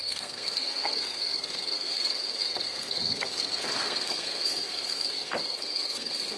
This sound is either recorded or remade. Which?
remade